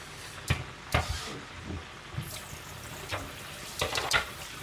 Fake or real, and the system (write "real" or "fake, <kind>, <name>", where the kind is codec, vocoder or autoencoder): fake, vocoder, BigVGAN v2